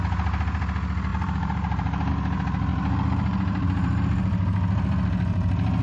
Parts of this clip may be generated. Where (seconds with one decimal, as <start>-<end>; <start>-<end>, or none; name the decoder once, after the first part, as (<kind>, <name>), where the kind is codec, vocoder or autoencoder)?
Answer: 1.1-2.1 (vocoder, BigVGAN v2); 2.7-5.8

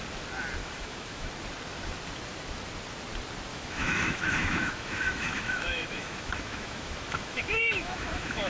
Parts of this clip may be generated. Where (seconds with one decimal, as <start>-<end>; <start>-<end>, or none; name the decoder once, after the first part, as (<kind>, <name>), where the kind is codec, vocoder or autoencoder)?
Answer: 0.6-1.3 (autoencoder, DAC-VAE); 3.5-8.5

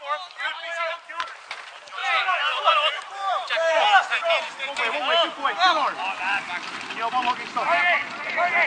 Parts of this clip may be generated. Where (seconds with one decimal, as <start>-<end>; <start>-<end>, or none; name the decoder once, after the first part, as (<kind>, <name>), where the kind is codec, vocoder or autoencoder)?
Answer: 2.0-3.8 (vocoder, BigVGAN v2)